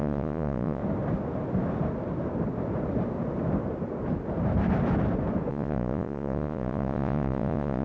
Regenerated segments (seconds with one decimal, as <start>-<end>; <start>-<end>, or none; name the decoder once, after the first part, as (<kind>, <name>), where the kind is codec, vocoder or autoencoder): 0.0-0.8 (vocoder, Vocos); 5.5-7.8